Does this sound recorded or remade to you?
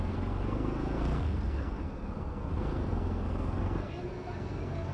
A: remade